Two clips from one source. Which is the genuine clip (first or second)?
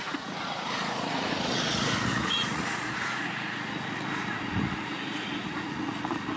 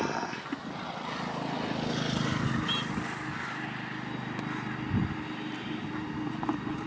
second